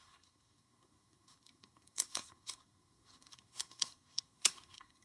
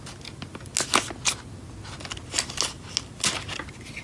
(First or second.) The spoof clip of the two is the first